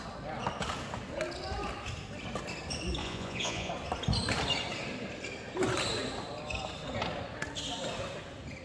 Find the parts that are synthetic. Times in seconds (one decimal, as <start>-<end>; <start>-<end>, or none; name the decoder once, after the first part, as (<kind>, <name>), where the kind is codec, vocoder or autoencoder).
3.0-3.7 (vocoder, Vocos)